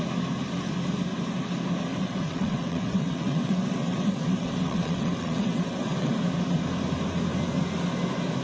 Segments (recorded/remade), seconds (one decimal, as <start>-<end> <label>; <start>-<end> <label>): 0.0-1.9 recorded; 1.9-6.1 remade; 6.1-8.4 recorded